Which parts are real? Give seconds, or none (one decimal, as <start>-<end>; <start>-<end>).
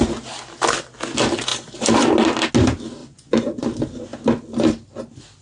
0.0-3.0; 3.6-5.4